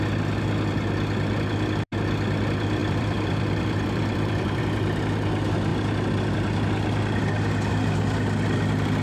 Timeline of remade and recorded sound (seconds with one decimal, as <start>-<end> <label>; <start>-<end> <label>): 0.0-2.8 recorded; 2.8-4.6 remade; 4.6-9.0 recorded